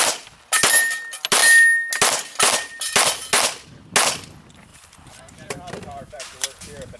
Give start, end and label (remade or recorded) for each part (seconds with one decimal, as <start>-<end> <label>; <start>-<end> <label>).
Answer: 0.0-4.7 recorded; 4.7-6.6 remade; 6.6-7.0 recorded